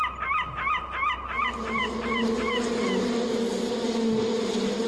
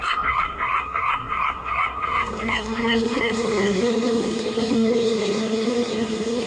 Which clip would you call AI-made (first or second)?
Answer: second